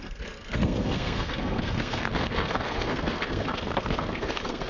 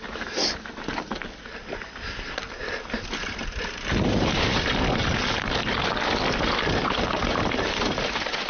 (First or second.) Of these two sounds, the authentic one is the second